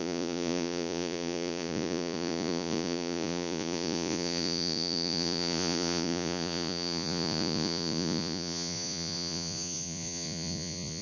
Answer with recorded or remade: remade